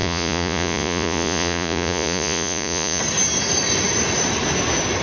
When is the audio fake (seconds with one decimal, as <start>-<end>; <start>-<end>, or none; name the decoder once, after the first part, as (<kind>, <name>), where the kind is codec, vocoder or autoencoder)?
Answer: 0.0-3.0 (vocoder, Vocos)